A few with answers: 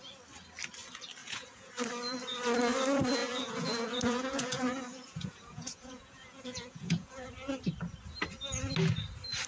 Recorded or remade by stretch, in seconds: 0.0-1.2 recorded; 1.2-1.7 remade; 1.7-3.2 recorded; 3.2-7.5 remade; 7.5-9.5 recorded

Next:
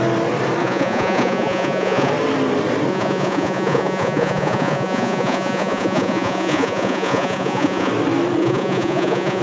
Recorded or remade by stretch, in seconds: 0.0-0.6 recorded; 0.6-2.1 remade; 2.1-2.9 recorded; 2.9-7.9 remade; 7.9-8.4 recorded; 8.4-9.4 remade

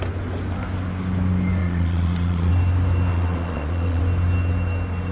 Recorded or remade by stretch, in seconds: 0.0-1.6 recorded; 1.6-2.5 remade; 2.5-3.1 recorded; 3.1-4.0 remade; 4.0-5.1 recorded

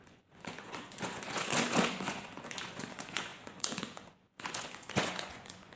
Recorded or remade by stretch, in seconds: 0.0-5.8 remade

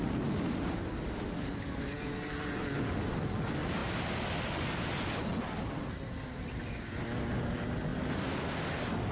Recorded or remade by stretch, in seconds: 0.0-9.1 recorded

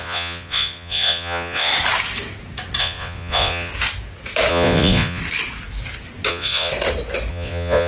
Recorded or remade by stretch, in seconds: 0.0-1.7 remade; 1.7-2.8 recorded; 2.8-3.7 remade; 3.7-4.5 recorded; 4.5-5.2 remade; 5.2-6.3 recorded; 6.3-6.7 remade; 6.7-7.3 recorded; 7.3-7.9 remade

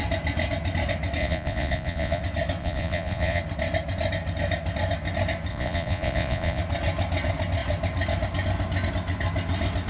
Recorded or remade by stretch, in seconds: 0.0-1.2 recorded; 1.2-2.2 remade; 2.2-2.6 recorded; 2.6-3.4 remade; 3.4-5.5 recorded; 5.5-6.6 remade; 6.6-9.9 recorded